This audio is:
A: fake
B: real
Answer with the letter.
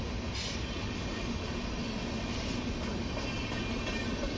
B